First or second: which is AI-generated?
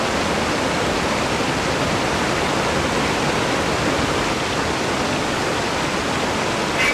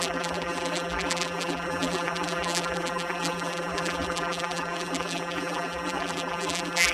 second